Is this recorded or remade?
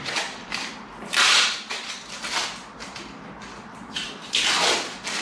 remade